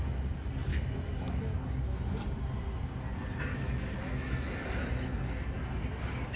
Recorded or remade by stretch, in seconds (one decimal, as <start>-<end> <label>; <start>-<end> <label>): 0.0-0.7 recorded; 0.7-1.4 remade; 1.4-3.5 recorded; 3.5-4.8 remade; 4.8-6.4 recorded